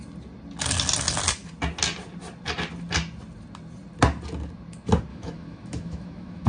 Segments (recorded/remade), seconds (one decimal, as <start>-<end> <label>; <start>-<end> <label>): 0.0-5.1 recorded; 5.1-6.5 remade